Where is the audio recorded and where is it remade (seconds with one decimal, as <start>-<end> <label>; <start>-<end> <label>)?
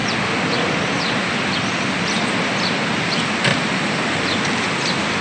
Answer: 0.0-5.2 recorded